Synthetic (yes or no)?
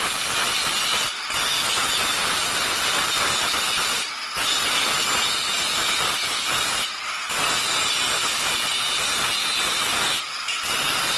no